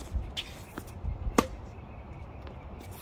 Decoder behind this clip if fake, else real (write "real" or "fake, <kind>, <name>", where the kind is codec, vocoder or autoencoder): real